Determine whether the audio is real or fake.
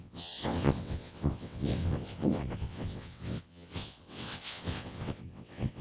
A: fake